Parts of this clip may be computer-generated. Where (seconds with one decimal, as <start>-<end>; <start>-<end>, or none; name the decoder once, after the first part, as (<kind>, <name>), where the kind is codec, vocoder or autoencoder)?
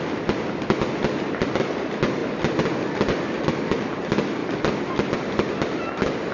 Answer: none